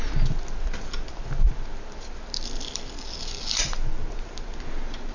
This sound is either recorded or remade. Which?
recorded